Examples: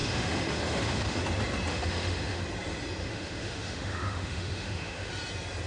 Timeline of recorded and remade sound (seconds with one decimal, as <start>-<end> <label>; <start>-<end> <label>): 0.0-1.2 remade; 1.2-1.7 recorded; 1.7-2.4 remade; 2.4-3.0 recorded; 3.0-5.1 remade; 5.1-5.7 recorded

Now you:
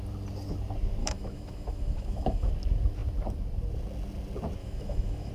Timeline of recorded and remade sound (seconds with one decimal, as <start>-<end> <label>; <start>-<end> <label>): 0.0-1.0 recorded; 1.0-2.5 remade; 2.5-4.6 recorded; 4.6-5.3 remade

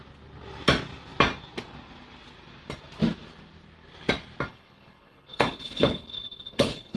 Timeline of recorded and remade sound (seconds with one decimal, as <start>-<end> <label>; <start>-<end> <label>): 0.0-4.5 recorded; 4.5-7.0 remade